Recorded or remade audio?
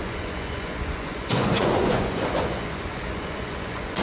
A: remade